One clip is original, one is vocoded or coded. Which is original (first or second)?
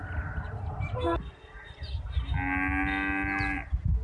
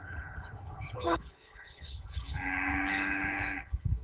first